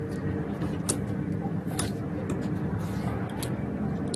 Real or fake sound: real